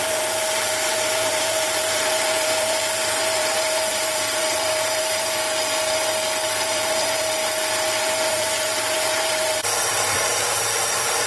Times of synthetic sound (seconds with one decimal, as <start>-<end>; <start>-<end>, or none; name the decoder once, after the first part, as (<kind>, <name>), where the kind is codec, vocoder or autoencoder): 0.0-5.4 (vocoder, BigVGAN v2); 6.6-7.4; 8.0-11.3